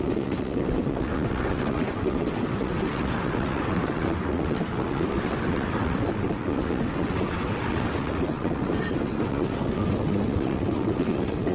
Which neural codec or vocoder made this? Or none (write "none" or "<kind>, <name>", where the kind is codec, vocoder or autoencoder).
vocoder, WaveNeXt